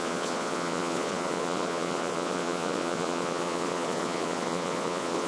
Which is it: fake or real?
fake